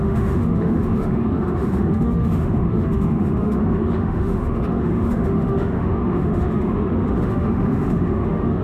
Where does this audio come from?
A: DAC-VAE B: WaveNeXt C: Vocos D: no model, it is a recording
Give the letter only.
A